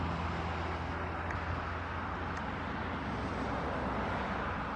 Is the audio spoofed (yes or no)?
no